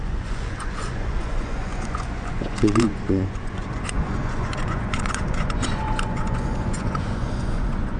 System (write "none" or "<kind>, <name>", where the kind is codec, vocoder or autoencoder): vocoder, Vocos